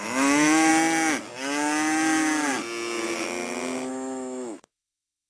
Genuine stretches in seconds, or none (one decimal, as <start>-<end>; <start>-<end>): 0.7-3.9